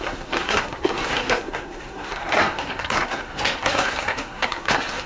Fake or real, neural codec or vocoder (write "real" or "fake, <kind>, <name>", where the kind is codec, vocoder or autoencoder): fake, codec, SNAC